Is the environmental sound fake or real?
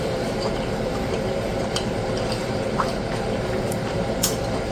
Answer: fake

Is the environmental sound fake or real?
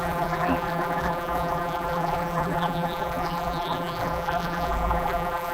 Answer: fake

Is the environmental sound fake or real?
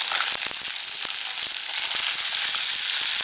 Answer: real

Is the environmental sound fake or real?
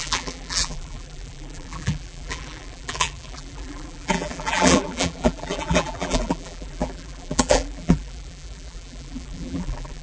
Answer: fake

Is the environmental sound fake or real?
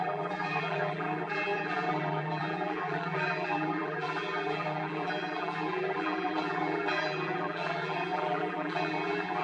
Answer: fake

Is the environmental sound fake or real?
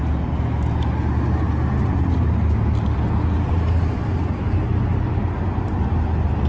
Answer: real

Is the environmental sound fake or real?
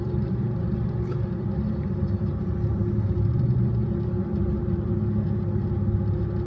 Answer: fake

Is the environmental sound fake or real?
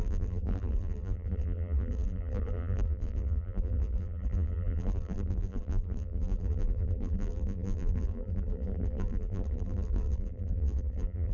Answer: fake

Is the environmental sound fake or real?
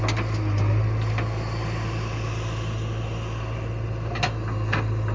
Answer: real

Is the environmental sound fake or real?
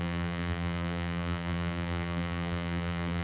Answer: fake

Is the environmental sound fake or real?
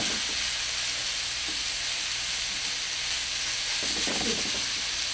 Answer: real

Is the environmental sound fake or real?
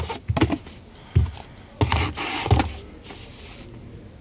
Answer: real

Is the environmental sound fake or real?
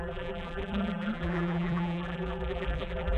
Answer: fake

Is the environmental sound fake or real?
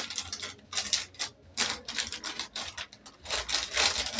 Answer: fake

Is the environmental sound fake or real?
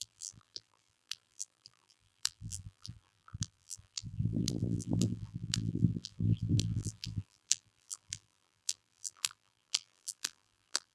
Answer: fake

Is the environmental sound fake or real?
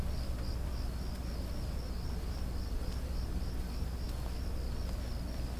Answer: real